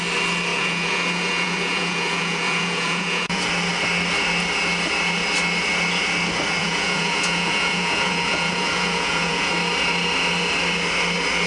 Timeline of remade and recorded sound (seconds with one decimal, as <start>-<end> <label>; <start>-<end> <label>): 0.0-0.5 recorded; 0.5-3.5 remade; 3.5-6.6 recorded; 6.6-9.5 remade; 9.5-11.5 recorded